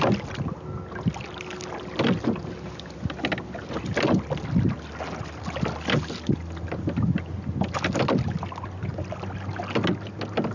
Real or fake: real